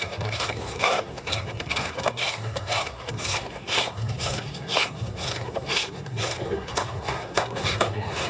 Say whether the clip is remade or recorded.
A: remade